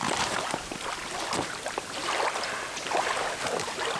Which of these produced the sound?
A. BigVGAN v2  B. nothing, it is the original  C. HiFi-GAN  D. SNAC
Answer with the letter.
B